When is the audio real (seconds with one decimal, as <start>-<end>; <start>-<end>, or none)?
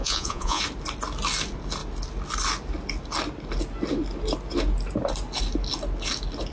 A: 0.6-6.5